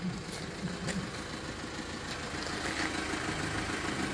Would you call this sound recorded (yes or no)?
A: yes